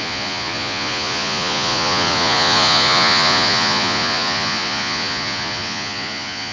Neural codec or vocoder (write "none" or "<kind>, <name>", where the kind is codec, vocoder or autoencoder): vocoder, Vocos